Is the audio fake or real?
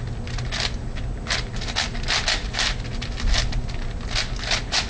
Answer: real